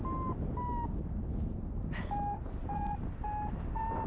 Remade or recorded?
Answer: recorded